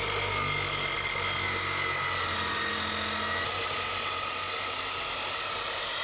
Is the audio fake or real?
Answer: real